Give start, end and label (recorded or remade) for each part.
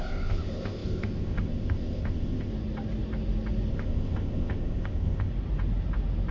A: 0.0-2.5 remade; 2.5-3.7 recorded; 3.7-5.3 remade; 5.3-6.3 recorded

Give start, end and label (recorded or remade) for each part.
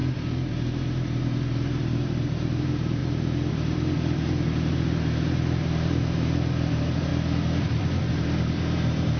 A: 0.0-3.0 remade; 3.0-3.5 recorded; 3.5-7.1 remade; 7.1-8.1 recorded; 8.1-9.2 remade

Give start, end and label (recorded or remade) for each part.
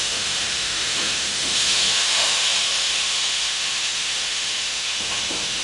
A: 0.0-5.6 remade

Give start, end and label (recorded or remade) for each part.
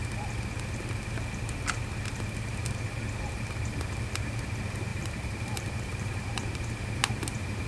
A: 0.0-4.9 recorded; 4.9-7.0 remade; 7.0-7.7 recorded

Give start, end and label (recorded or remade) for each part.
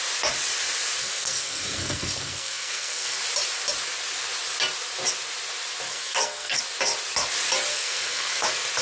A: 0.0-1.0 recorded; 1.0-3.2 remade; 3.2-5.9 recorded; 5.9-6.6 remade; 6.6-7.7 recorded; 7.7-8.4 remade; 8.4-8.8 recorded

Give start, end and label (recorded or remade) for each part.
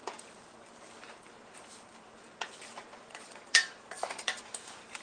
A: 0.0-3.1 recorded; 3.1-4.4 remade; 4.4-5.0 recorded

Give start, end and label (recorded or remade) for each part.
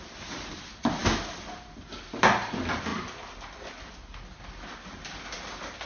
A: 0.0-5.9 recorded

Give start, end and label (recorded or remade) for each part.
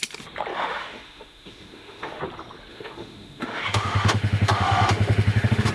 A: 0.0-0.5 recorded; 0.5-2.2 remade; 2.2-2.7 recorded; 2.7-5.7 remade